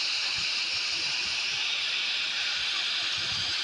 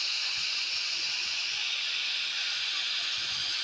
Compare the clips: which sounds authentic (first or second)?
first